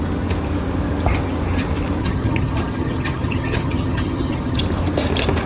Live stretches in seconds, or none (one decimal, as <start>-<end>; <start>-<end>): 0.0-2.0; 4.6-5.5